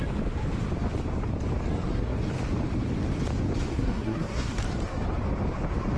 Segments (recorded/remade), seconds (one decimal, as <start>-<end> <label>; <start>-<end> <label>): 0.0-1.7 recorded; 1.7-2.2 remade; 2.2-3.7 recorded; 3.7-4.6 remade; 4.6-6.0 recorded